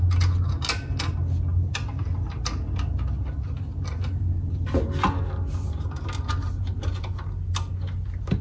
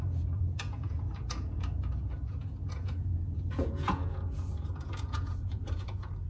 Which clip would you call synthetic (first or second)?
second